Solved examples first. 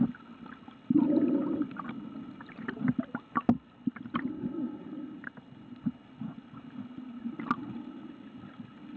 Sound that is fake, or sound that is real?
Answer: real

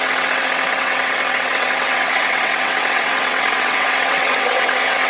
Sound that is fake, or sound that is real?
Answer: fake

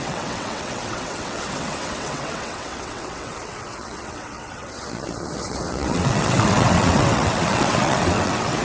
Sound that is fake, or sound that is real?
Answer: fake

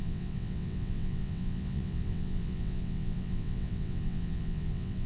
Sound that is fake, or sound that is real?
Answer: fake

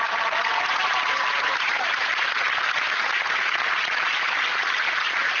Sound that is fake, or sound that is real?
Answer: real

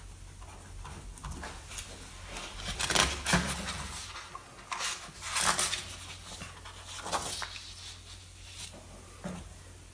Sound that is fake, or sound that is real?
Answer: real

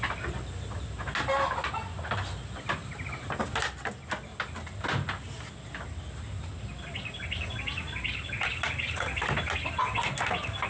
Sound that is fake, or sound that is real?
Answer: real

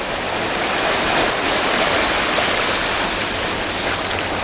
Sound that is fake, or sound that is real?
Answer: real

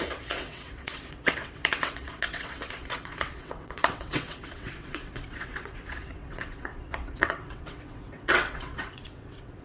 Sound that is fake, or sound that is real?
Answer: fake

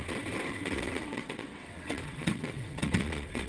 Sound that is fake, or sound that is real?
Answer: fake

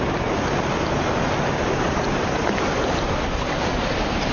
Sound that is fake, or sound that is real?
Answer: real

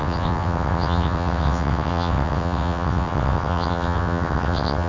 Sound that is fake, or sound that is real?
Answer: fake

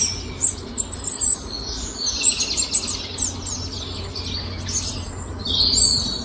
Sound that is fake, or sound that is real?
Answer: real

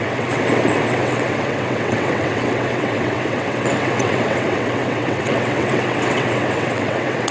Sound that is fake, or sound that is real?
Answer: fake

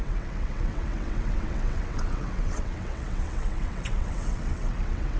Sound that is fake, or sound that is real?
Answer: fake